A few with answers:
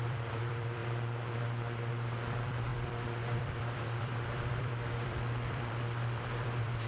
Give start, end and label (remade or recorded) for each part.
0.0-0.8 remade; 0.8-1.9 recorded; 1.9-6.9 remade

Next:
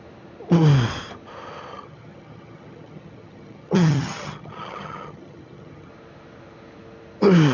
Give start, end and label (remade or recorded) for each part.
0.0-1.7 recorded; 1.7-5.9 remade; 5.9-7.5 recorded

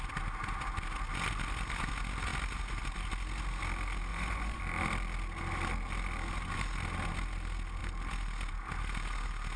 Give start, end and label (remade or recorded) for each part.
0.0-4.1 recorded; 4.1-4.6 remade; 4.6-9.6 recorded

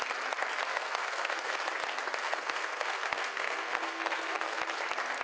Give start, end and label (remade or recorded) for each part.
0.0-0.7 recorded; 0.7-1.6 remade; 1.6-2.2 recorded; 2.2-4.6 remade; 4.6-5.2 recorded